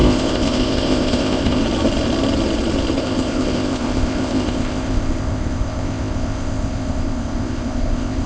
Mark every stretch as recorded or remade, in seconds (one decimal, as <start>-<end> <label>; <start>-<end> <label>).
0.0-1.6 remade; 1.6-3.0 recorded; 3.0-8.3 remade